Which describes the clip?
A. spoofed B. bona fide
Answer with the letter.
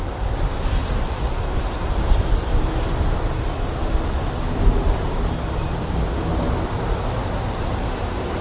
B